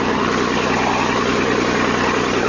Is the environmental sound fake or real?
real